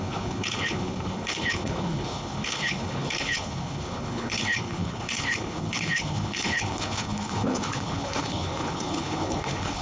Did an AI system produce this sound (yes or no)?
yes